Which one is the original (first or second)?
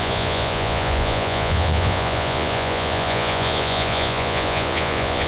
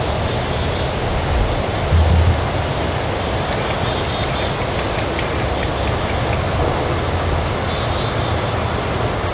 second